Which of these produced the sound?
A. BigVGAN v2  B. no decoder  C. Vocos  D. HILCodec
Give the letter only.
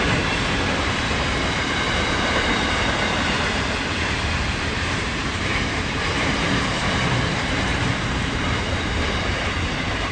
A